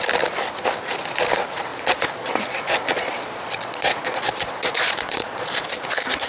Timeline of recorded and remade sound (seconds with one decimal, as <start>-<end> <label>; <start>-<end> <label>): 0.0-1.7 recorded; 1.7-5.5 remade; 5.5-6.3 recorded